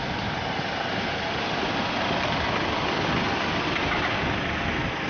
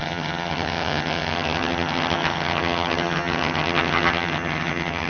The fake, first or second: second